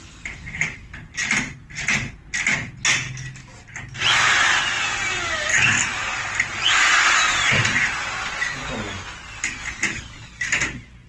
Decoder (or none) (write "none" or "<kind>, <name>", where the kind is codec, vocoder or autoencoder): none